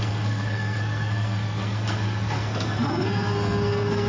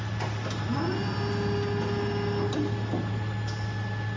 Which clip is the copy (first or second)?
first